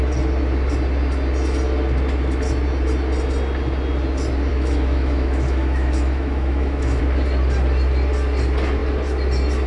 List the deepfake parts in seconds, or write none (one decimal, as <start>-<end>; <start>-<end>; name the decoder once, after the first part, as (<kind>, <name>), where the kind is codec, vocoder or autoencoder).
4.5-7.0 (autoencoder, DAC-VAE)